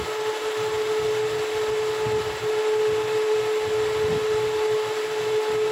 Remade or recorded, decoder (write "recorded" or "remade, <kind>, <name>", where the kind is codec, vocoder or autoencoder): recorded